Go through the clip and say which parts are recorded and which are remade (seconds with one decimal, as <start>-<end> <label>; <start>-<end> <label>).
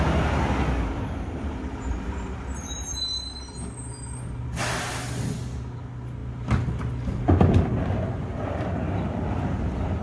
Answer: 0.0-10.0 recorded